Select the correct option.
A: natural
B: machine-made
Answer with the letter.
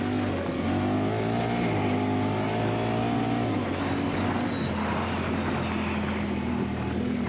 A